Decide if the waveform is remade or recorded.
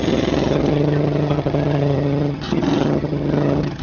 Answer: remade